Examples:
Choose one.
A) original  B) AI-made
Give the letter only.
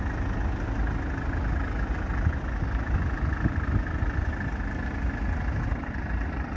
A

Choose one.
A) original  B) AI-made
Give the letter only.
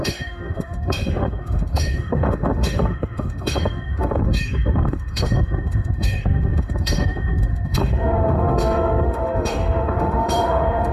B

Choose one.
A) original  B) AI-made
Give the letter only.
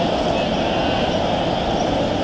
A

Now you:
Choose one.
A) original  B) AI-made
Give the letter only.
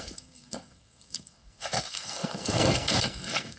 B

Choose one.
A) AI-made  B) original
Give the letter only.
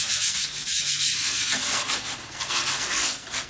A